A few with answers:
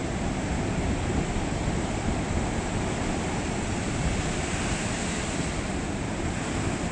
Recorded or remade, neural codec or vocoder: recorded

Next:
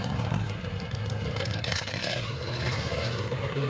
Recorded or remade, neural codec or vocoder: remade, codec, SNAC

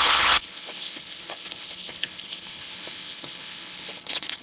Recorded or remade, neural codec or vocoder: remade, codec, HILCodec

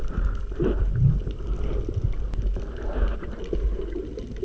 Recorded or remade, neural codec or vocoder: recorded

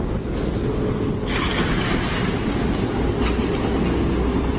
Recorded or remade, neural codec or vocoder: recorded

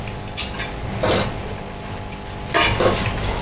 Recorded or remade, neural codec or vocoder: recorded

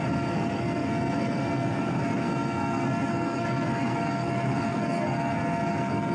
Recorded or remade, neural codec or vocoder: remade, codec, SNAC